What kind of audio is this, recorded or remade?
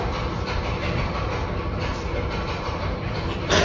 recorded